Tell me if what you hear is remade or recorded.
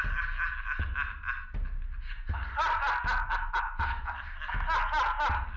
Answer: recorded